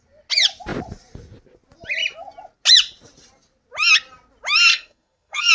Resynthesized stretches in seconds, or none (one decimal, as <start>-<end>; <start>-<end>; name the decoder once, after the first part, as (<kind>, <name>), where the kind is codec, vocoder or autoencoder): 4.7-5.5 (codec, SNAC)